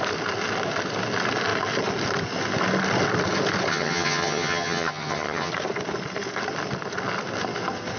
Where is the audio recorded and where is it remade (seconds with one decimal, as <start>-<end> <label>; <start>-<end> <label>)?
0.0-3.7 recorded; 3.7-5.5 remade; 5.5-8.0 recorded